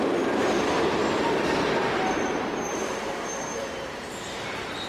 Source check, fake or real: fake